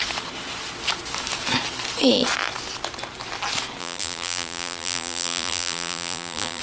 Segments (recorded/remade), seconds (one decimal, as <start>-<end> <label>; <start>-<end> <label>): 0.0-3.8 recorded; 3.8-6.6 remade

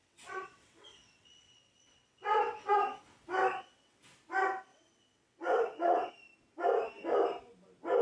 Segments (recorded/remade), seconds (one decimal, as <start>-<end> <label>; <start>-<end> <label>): 0.0-2.7 remade; 2.7-3.1 recorded; 3.1-4.0 remade; 4.0-4.7 recorded; 4.7-6.1 remade; 6.1-8.0 recorded

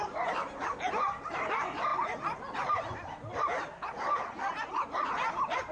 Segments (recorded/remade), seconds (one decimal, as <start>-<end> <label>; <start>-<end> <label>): 0.0-5.7 recorded

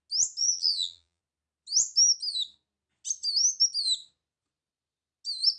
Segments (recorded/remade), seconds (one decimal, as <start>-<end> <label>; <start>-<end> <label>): 0.0-0.4 recorded; 0.4-1.2 remade; 1.2-5.6 recorded